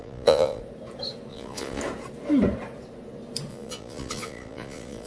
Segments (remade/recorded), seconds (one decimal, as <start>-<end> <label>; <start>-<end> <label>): 0.0-0.6 remade; 0.6-1.3 recorded; 1.3-1.8 remade; 1.8-3.5 recorded; 3.5-5.1 remade

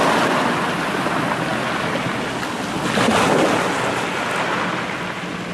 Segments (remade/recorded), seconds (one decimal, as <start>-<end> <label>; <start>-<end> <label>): 0.0-5.5 recorded

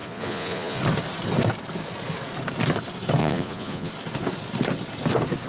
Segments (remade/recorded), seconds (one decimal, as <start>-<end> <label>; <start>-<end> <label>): 0.0-0.8 remade; 0.8-3.2 recorded; 3.2-3.9 remade; 3.9-5.5 recorded

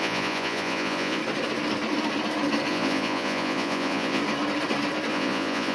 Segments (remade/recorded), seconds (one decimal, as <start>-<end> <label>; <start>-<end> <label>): 0.0-1.2 remade; 1.2-2.7 recorded; 2.7-4.2 remade; 4.2-5.1 recorded; 5.1-5.7 remade

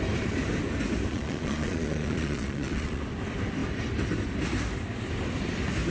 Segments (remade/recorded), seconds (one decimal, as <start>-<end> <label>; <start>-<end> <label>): 0.0-1.1 recorded; 1.1-3.0 remade; 3.0-5.9 recorded

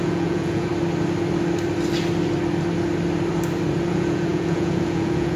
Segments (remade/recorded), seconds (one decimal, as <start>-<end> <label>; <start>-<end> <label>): 0.0-0.7 remade; 0.7-3.9 recorded; 3.9-5.4 remade